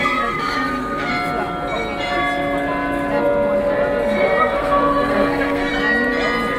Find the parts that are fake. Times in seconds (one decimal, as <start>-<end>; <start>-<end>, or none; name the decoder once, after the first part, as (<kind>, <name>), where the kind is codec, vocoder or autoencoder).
0.0-1.1 (codec, SNAC); 4.4-5.7